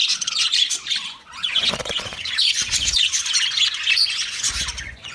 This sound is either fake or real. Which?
fake